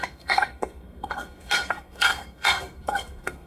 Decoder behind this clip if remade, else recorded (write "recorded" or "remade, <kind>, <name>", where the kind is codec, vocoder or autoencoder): remade, codec, SNAC